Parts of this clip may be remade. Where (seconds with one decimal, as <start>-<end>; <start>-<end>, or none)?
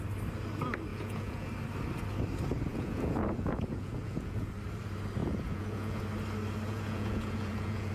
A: 0.9-1.5; 2.7-4.5; 5.2-6.0; 6.7-7.9